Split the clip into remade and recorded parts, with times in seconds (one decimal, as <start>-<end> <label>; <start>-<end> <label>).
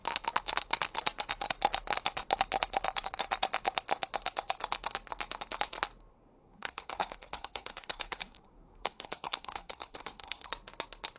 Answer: 0.0-6.1 recorded; 6.1-10.5 remade; 10.5-11.2 recorded